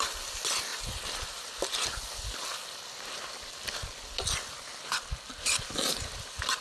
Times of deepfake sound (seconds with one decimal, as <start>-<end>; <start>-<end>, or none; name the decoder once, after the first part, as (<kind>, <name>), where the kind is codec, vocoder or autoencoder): none